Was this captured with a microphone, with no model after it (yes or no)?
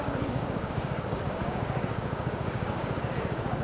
no